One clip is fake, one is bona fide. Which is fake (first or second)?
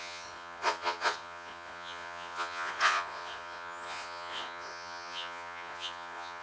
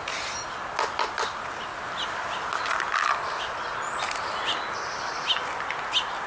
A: first